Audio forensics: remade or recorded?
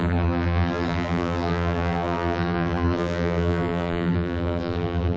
remade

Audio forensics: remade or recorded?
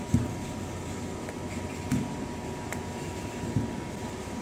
recorded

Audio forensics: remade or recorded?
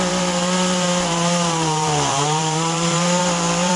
remade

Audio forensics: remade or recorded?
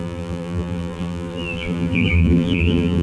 remade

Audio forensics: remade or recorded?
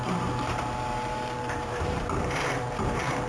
remade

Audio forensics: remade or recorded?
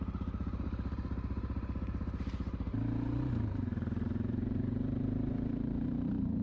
remade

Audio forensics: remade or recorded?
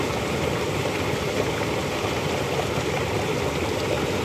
recorded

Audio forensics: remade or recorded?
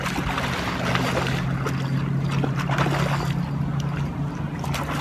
recorded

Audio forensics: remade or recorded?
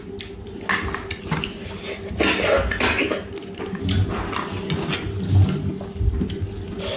recorded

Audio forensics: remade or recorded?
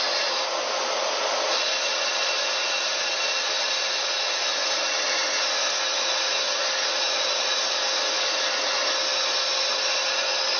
recorded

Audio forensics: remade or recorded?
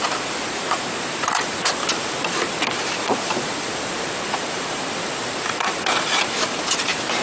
remade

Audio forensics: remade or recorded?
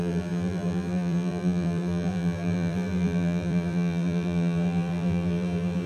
remade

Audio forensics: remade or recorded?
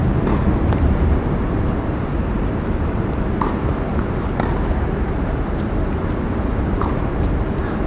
remade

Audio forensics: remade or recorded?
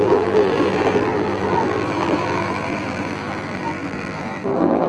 remade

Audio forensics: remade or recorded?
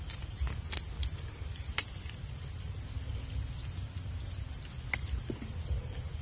recorded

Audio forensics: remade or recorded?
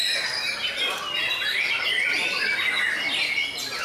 recorded